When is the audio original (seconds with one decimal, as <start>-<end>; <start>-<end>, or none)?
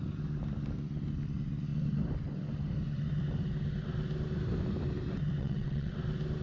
0.0-5.4; 5.9-6.4